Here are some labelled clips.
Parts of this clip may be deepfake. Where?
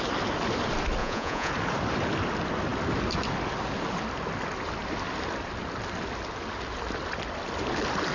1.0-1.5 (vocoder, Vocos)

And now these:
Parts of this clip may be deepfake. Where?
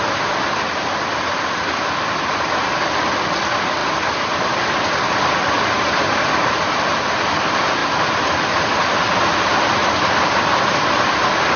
none